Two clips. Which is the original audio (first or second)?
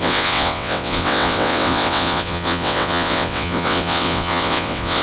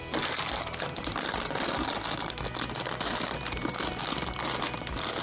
second